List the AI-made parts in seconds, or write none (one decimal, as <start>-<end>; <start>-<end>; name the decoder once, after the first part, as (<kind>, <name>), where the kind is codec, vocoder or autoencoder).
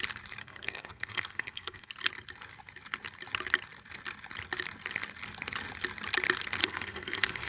0.4-1.9 (codec, SNAC); 6.6-7.5